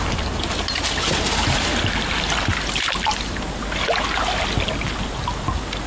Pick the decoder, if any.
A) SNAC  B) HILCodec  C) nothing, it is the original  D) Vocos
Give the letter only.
C